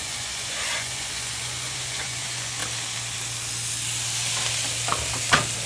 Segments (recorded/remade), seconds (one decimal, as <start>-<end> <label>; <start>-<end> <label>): 0.0-2.6 remade; 2.6-5.7 recorded